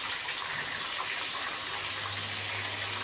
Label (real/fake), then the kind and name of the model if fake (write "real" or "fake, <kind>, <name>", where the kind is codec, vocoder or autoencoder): real